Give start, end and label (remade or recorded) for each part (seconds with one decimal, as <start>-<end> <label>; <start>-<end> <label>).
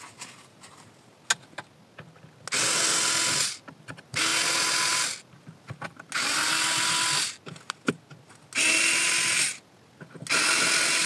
0.0-11.1 recorded